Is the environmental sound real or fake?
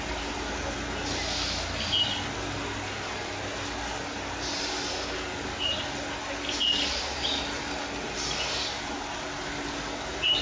real